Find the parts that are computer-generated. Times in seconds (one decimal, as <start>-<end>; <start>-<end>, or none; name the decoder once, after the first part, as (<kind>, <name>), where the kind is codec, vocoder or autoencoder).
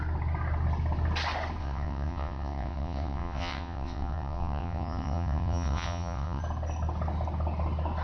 1.6-6.4 (vocoder, WaveNeXt)